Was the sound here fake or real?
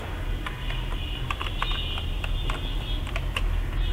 real